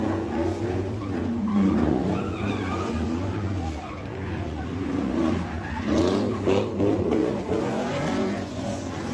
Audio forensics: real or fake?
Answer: fake